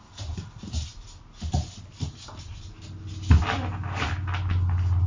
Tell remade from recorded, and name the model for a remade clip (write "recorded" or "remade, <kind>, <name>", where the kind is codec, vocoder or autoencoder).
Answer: recorded